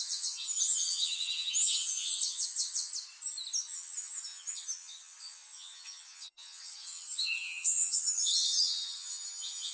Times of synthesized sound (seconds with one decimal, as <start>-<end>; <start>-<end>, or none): 0.0-2.9; 3.6-9.7